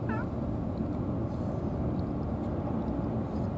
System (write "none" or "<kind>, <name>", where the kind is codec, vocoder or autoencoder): none